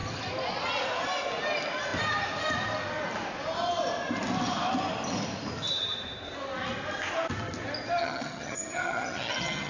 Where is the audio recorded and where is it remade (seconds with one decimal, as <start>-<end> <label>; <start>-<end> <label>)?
0.0-8.0 recorded; 8.0-9.7 remade